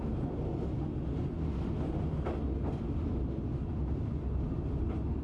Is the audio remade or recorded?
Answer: recorded